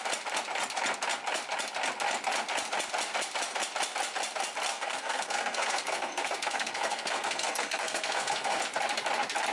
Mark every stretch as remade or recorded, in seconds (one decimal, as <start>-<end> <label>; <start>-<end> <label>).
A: 0.0-4.7 recorded; 4.7-8.6 remade; 8.6-9.5 recorded